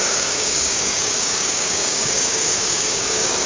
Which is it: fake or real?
fake